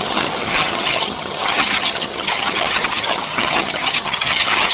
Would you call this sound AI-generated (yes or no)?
yes